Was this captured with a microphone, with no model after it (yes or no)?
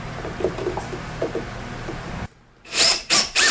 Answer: no